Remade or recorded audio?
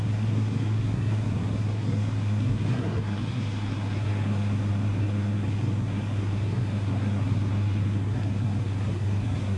remade